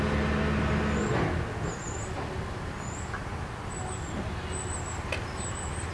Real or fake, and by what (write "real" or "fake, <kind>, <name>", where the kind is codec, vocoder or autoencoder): real